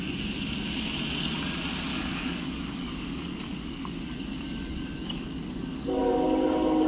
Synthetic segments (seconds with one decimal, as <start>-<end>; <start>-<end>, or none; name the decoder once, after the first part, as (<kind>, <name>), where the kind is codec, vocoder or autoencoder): 1.9-6.0 (codec, DAC)